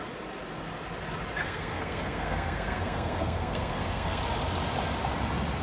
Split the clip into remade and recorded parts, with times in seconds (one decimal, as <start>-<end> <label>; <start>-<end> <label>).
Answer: 0.0-1.4 recorded; 1.4-4.2 remade; 4.2-5.6 recorded